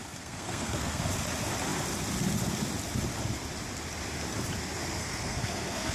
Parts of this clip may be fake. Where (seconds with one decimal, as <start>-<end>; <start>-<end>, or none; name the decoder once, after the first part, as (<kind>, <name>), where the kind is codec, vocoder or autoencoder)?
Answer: 0.0-1.0 (codec, SNAC); 5.0-5.9